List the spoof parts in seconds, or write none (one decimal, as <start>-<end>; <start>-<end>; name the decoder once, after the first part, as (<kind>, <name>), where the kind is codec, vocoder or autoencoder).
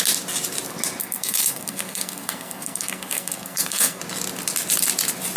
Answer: 1.0-4.0 (codec, SNAC)